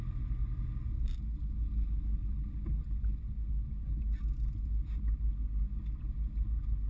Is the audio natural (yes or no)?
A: yes